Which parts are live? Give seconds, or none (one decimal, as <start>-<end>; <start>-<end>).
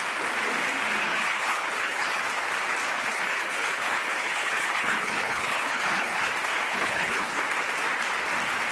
0.0-1.0; 2.2-2.9; 6.3-6.7; 7.4-8.7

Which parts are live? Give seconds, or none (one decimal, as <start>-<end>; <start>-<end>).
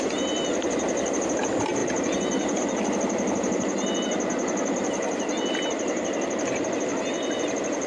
0.0-7.9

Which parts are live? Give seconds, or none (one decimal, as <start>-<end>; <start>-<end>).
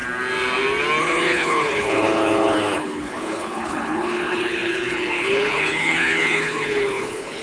0.0-1.0